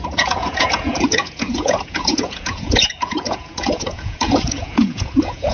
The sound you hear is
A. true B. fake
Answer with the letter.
B